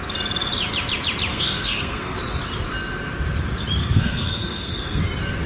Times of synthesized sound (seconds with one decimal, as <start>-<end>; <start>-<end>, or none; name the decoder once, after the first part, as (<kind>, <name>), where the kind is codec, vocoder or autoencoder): 1.3-2.2 (codec, SNAC); 3.8-5.0